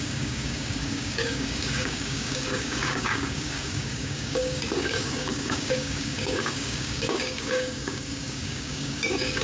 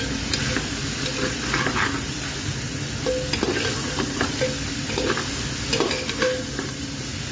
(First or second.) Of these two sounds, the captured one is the second